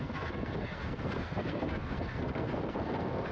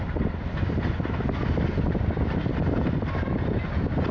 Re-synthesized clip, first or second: first